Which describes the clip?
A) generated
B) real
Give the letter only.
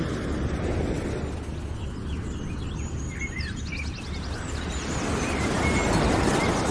B